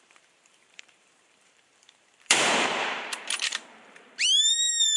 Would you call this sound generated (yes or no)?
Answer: yes